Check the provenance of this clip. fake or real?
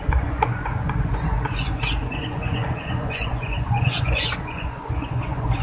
fake